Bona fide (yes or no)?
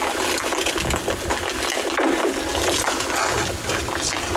yes